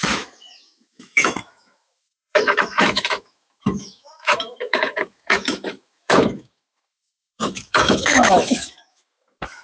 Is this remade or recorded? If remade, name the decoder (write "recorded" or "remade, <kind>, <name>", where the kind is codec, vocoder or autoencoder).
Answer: remade, autoencoder, DAC-VAE